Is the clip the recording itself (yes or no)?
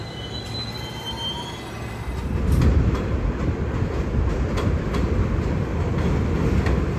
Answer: yes